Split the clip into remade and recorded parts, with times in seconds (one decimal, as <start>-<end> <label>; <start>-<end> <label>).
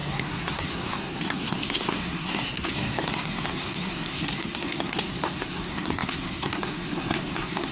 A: 0.0-7.7 remade